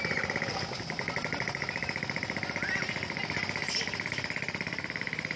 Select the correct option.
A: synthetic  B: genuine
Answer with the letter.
B